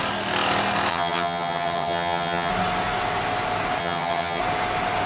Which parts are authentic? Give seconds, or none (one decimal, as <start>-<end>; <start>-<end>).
0.0-0.9; 2.5-3.8; 4.4-5.1